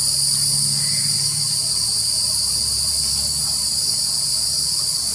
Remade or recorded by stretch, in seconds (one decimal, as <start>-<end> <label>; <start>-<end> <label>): 0.0-1.0 recorded; 1.0-3.4 remade; 3.4-5.1 recorded